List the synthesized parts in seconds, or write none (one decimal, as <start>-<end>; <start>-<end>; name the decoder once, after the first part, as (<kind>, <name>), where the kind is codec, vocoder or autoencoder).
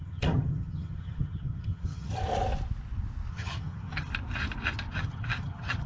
0.0-2.2 (vocoder, HiFi-GAN); 3.3-4.1; 4.9-5.9